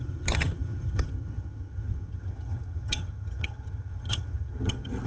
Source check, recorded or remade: remade